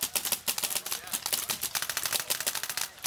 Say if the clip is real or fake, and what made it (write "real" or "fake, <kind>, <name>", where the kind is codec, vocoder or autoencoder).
real